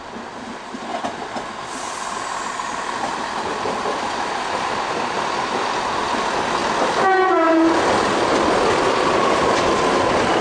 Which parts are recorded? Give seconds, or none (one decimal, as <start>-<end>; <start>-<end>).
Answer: 0.0-10.4